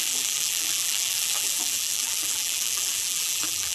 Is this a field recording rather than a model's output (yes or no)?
no